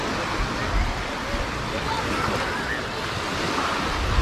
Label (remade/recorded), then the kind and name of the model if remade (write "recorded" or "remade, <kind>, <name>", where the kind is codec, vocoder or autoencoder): recorded